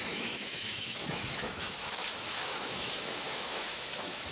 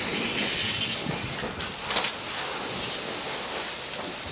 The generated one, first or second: first